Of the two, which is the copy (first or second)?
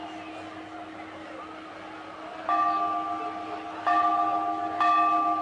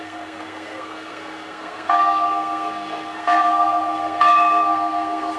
second